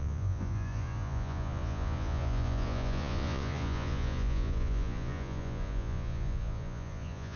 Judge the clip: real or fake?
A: fake